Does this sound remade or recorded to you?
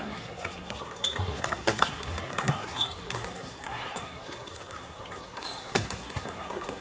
remade